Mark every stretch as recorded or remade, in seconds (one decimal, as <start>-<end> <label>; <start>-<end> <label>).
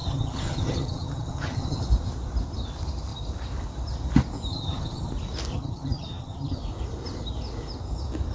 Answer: 0.0-1.9 remade; 1.9-4.5 recorded; 4.5-5.1 remade; 5.1-5.5 recorded; 5.5-6.6 remade; 6.6-8.3 recorded